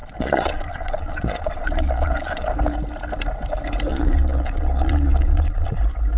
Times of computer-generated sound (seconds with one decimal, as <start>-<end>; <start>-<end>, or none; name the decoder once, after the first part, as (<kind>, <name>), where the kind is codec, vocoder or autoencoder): 0.0-2.5 (vocoder, Vocos); 3.9-5.8